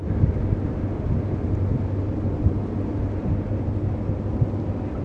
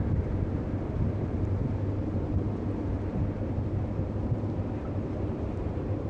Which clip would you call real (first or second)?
first